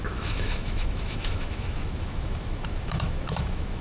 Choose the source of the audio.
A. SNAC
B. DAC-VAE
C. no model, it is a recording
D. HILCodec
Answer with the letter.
B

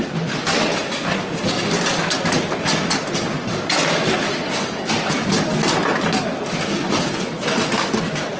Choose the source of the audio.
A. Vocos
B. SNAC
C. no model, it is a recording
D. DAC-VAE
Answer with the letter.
C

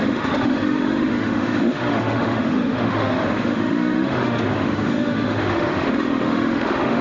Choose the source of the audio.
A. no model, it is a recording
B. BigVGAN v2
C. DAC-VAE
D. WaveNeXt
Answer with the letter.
C